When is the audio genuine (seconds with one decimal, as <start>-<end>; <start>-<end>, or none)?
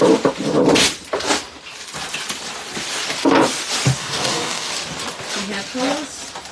0.0-4.0; 4.7-6.5